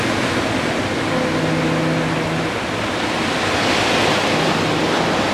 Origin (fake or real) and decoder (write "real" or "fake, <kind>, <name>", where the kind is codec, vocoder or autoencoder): real